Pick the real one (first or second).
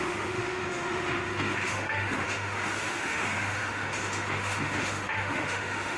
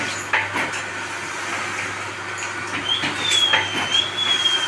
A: second